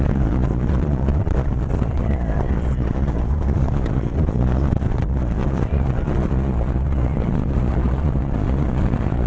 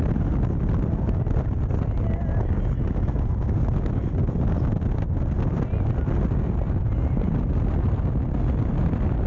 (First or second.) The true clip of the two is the second